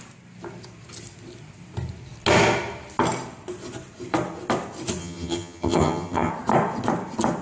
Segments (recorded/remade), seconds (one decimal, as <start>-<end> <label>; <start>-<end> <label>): 0.0-5.0 recorded; 5.0-6.3 remade; 6.3-7.4 recorded